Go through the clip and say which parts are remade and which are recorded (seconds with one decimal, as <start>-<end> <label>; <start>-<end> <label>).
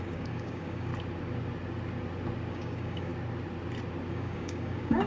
0.0-0.9 remade; 0.9-2.5 recorded; 2.5-3.1 remade; 3.1-4.1 recorded; 4.1-5.1 remade